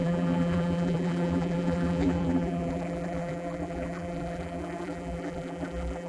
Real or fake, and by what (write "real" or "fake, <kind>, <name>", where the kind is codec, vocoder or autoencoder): fake, vocoder, BigVGAN v2